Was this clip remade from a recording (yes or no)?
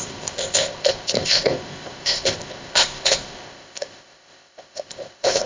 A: yes